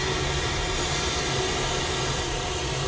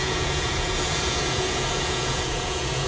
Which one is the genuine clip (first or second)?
first